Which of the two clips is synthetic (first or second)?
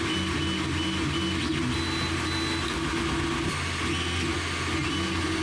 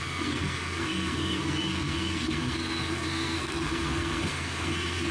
second